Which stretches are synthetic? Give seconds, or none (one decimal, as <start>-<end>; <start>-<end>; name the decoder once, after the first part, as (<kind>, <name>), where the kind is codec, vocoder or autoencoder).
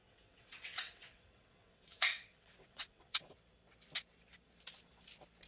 0.0-3.3 (vocoder, WaveNeXt)